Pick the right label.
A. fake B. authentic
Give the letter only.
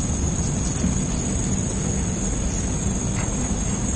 B